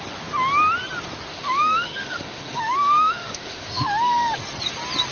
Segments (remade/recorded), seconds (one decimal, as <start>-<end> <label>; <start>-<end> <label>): 0.0-1.3 recorded; 1.3-4.4 remade; 4.4-5.1 recorded